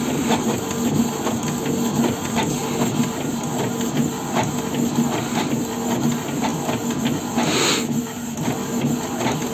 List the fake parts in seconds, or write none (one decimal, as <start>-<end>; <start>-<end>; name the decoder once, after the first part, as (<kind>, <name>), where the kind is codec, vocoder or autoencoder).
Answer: none